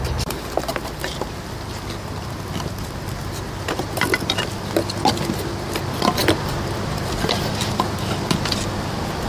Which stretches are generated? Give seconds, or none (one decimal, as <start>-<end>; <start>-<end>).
none